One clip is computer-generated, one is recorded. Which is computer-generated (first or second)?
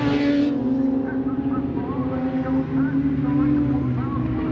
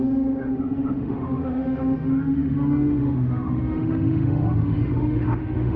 second